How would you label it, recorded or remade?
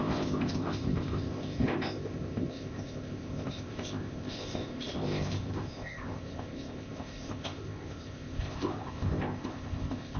remade